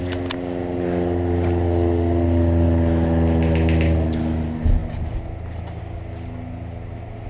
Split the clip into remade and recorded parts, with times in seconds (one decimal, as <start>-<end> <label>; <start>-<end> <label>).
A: 0.0-7.3 recorded